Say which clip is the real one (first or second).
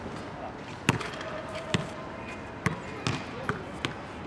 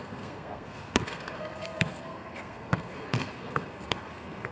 first